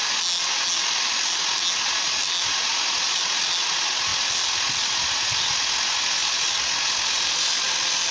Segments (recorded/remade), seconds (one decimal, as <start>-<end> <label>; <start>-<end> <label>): 0.0-8.1 recorded